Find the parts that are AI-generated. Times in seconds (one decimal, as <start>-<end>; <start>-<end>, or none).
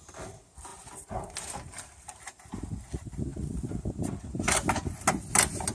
none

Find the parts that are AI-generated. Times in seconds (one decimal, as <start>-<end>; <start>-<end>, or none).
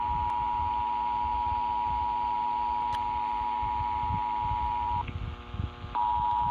none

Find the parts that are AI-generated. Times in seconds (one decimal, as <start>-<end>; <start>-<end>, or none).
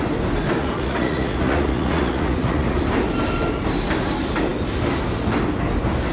0.6-2.8